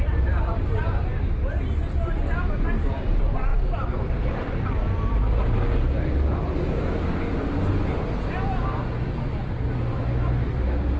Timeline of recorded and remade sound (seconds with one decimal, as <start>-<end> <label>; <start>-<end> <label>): 0.0-11.0 recorded